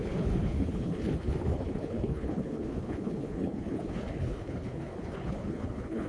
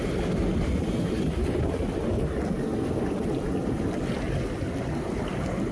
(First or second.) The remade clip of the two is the first